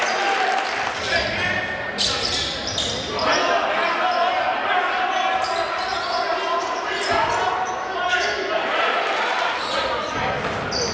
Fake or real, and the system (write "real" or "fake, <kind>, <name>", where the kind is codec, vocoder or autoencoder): real